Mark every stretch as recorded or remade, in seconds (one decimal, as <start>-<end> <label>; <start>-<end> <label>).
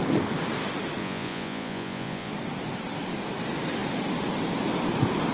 0.0-1.0 recorded; 1.0-2.3 remade; 2.3-5.3 recorded